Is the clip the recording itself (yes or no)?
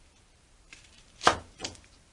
no